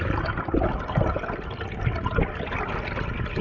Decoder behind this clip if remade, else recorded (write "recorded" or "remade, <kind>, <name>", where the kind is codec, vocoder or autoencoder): recorded